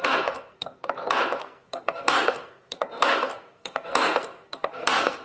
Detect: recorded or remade remade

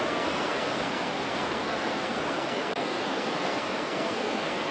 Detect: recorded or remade remade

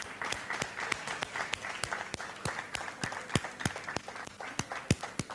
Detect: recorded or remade recorded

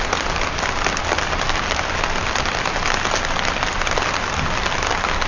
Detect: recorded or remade recorded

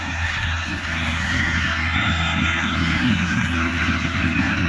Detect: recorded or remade remade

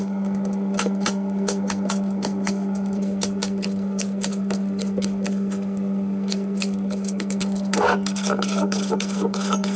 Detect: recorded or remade remade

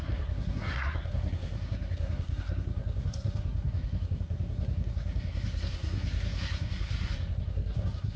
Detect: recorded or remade remade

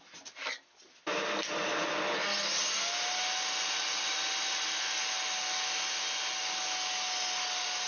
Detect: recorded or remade recorded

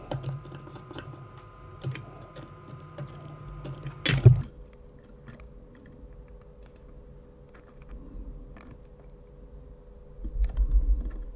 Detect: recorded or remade recorded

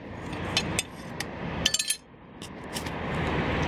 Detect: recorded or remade recorded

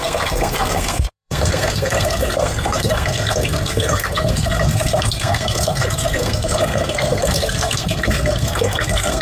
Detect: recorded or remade remade